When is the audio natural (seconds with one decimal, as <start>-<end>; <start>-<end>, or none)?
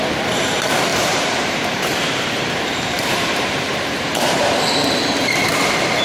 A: 0.0-0.9; 4.5-6.0